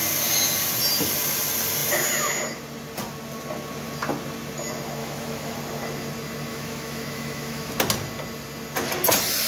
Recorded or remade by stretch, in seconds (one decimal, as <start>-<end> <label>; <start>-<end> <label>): 0.0-5.0 recorded; 5.0-5.6 remade; 5.6-6.5 recorded; 6.5-7.7 remade; 7.7-9.5 recorded